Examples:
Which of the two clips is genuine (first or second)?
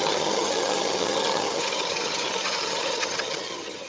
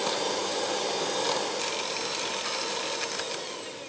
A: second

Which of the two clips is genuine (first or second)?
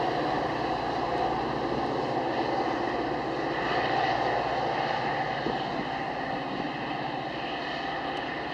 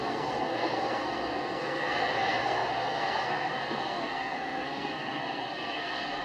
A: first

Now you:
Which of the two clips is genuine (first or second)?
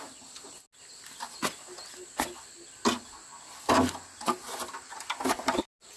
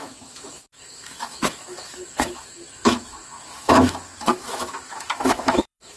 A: first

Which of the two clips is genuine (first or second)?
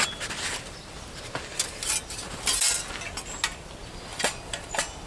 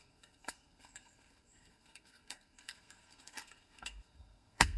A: first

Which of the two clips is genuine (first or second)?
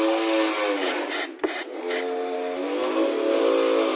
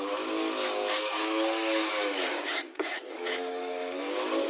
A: first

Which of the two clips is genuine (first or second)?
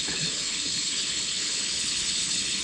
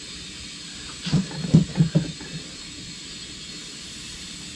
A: second